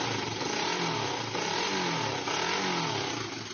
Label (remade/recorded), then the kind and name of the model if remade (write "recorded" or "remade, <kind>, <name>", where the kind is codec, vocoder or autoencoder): recorded